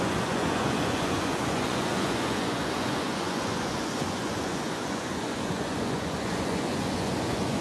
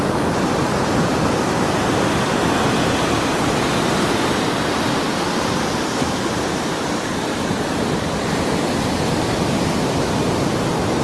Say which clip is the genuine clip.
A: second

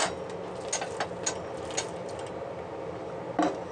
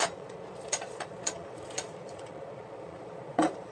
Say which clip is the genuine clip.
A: first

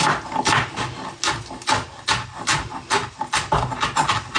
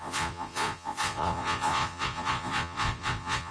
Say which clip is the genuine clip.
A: first